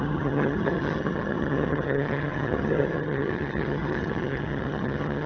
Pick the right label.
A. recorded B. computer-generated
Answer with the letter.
B